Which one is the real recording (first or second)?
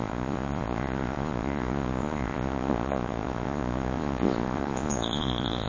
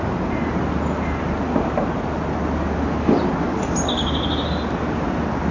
second